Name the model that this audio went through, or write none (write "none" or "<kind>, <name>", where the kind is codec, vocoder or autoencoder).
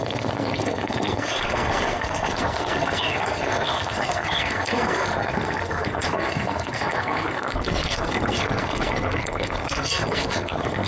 codec, SNAC